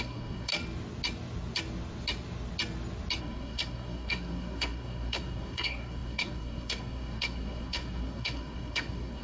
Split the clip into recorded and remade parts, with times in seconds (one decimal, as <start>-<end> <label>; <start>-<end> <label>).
0.0-0.5 remade; 0.5-3.2 recorded; 3.2-9.2 remade